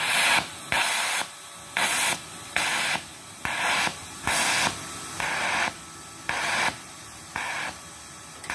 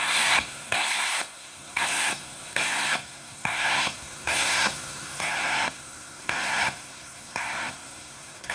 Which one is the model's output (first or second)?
second